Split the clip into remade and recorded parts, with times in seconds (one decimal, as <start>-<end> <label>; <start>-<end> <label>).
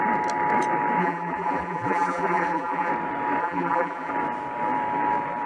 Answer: 0.0-1.0 recorded; 1.0-2.9 remade; 2.9-3.4 recorded; 3.4-4.1 remade; 4.1-5.5 recorded